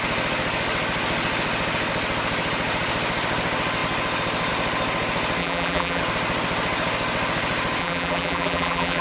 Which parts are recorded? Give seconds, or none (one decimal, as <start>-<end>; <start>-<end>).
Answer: 0.0-5.4; 6.0-7.8